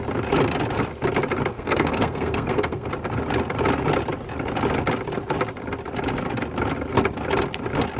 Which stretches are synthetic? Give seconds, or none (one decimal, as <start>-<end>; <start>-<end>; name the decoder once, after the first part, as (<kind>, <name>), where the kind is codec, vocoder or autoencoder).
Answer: 1.5-2.9 (codec, SNAC)